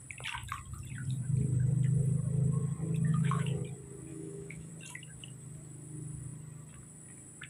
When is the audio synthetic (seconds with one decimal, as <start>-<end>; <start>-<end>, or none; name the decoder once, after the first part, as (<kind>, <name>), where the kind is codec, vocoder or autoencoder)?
3.1-3.6 (autoencoder, DAC-VAE); 4.1-4.7

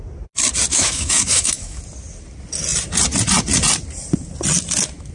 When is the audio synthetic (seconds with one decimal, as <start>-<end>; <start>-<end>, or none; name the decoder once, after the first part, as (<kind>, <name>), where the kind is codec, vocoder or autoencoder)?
0.7-1.8 (autoencoder, DAC-VAE)

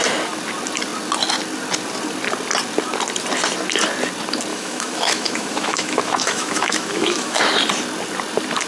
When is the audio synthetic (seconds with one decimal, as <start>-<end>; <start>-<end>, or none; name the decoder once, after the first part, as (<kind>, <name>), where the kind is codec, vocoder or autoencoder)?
4.5-7.4 (autoencoder, DAC-VAE)

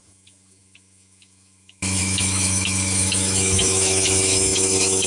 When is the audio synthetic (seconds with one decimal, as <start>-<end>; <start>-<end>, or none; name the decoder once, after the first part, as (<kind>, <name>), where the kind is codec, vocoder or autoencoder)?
0.0-5.1 (autoencoder, DAC-VAE)

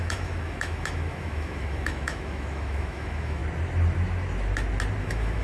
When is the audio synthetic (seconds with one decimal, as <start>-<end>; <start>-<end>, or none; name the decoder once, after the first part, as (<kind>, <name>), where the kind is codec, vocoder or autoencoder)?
0.0-3.4 (autoencoder, DAC-VAE); 5.0-5.4

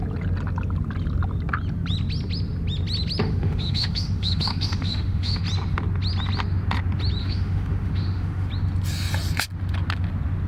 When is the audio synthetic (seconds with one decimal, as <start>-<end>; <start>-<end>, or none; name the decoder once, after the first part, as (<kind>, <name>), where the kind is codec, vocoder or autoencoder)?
3.2-5.4 (autoencoder, DAC-VAE); 7.2-8.5

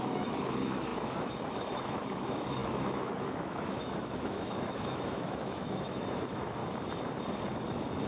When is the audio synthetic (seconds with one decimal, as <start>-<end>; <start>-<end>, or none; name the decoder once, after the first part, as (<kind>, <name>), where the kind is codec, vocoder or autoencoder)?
0.0-6.6 (autoencoder, DAC-VAE); 7.6-8.1